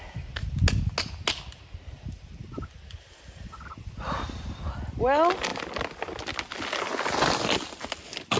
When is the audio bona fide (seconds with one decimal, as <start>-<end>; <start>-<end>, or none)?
0.0-8.4

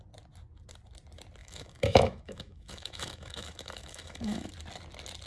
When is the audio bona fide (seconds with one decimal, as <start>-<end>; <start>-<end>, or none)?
0.0-1.4; 4.5-5.3

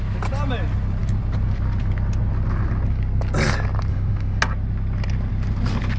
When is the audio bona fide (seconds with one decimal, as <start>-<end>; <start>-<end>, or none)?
0.0-3.9; 4.4-6.0